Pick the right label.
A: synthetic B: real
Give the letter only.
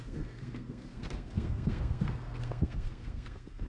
A